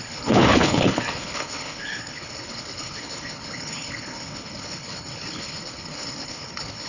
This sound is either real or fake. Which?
fake